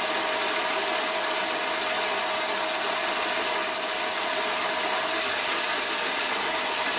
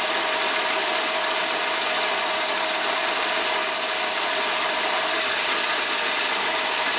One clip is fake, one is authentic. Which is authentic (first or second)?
first